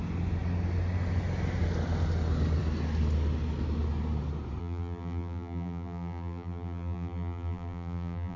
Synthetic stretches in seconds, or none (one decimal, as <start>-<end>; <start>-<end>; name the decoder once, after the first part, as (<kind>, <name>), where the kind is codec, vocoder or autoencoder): 4.6-8.4 (vocoder, BigVGAN v2)